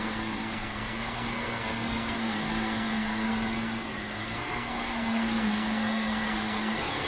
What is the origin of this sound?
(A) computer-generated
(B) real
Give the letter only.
A